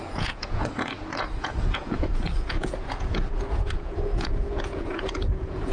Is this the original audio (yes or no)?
no